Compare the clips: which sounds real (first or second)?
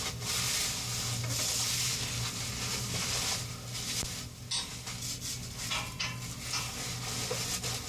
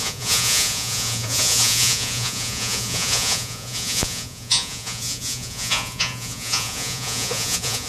first